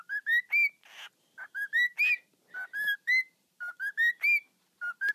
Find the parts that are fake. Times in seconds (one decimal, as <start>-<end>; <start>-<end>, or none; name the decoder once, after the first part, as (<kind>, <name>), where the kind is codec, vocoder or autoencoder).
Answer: none